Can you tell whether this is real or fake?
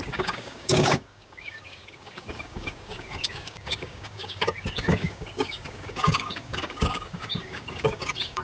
fake